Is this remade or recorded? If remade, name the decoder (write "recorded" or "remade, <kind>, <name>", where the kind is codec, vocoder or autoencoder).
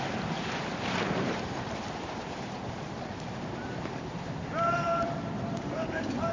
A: remade, vocoder, BigVGAN v2